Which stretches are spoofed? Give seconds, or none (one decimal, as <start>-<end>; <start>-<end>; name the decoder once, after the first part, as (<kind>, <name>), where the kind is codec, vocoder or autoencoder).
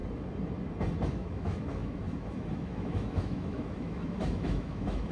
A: 1.0-5.1 (autoencoder, DAC-VAE)